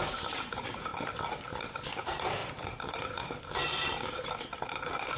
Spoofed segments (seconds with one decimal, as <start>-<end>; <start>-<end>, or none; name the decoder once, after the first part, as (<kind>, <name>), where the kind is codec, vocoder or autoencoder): 0.0-0.9 (vocoder, BigVGAN v2); 1.6-5.2